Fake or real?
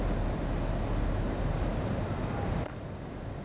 real